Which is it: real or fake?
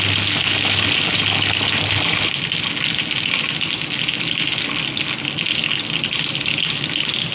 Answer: real